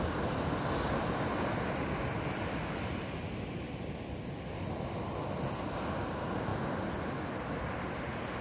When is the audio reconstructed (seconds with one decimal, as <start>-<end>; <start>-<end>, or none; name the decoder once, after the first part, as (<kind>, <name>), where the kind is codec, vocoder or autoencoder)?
none